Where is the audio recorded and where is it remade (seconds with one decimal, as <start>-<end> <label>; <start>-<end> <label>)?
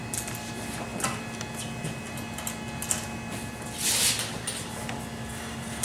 0.0-5.8 recorded